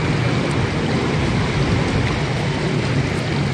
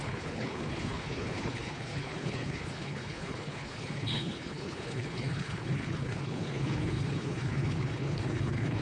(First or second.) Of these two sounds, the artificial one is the second